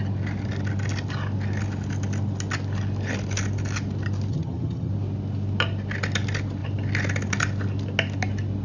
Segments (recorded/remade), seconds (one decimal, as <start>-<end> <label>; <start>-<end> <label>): 0.0-4.3 recorded; 4.3-4.9 remade; 4.9-8.6 recorded